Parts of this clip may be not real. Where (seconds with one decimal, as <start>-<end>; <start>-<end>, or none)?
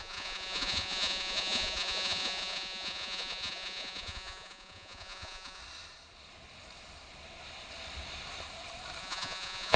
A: 0.0-5.6; 9.0-9.8